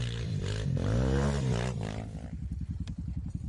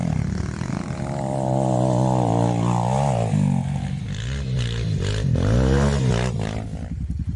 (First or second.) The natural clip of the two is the second